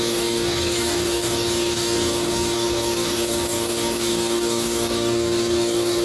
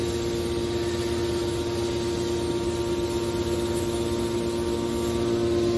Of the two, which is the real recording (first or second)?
second